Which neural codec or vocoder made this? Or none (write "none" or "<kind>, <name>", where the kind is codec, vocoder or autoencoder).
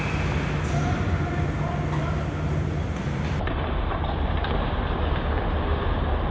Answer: none